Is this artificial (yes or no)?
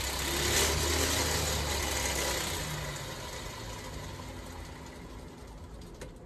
no